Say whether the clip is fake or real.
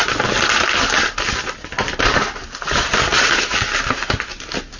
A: real